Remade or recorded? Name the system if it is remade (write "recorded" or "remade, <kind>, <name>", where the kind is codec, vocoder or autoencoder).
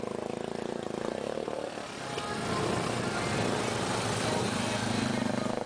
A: recorded